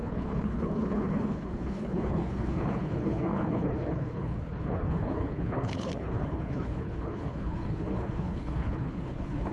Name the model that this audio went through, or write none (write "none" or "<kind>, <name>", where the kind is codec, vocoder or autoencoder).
codec, HILCodec